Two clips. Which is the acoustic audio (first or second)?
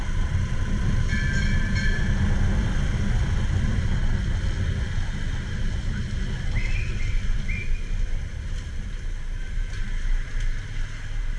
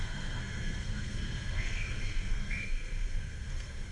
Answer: first